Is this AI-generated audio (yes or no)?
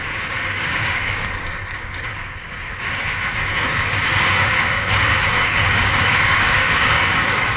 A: yes